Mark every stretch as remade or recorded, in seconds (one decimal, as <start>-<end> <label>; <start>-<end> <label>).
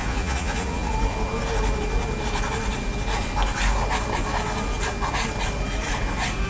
0.0-0.9 remade; 0.9-6.5 recorded